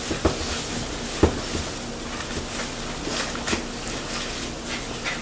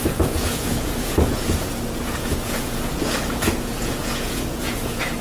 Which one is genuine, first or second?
first